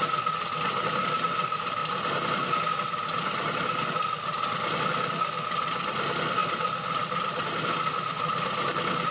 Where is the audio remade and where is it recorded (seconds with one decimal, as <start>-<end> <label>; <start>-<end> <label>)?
0.0-9.1 recorded